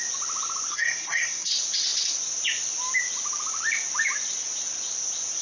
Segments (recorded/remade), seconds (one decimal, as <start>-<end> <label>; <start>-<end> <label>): 0.0-0.7 recorded; 0.7-1.5 remade; 1.5-5.4 recorded